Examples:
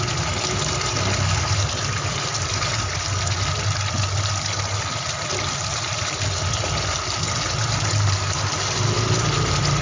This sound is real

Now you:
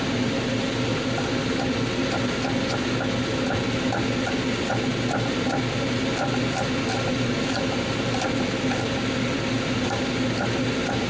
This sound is real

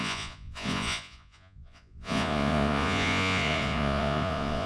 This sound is fake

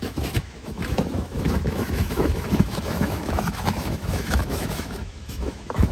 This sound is fake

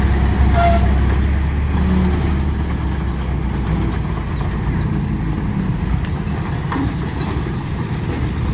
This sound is real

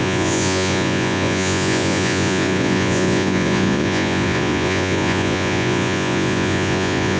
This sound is fake